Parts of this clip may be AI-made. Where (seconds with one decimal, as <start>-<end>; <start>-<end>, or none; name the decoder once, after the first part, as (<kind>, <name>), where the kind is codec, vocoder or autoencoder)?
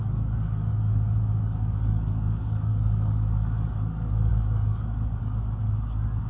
0.0-6.3 (codec, DAC)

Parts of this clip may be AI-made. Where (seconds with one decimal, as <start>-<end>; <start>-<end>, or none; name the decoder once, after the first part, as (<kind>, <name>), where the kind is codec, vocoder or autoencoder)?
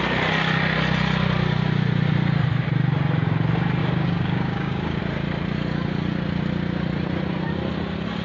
3.8-5.0 (codec, DAC)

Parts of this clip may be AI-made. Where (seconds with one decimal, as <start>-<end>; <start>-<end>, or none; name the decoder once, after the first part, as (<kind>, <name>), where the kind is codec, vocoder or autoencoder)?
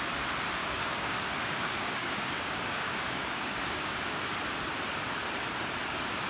0.6-4.4 (codec, DAC)